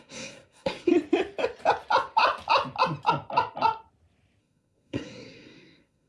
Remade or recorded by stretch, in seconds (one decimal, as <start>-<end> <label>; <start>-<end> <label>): 0.0-0.9 remade; 0.9-4.4 recorded; 4.4-6.1 remade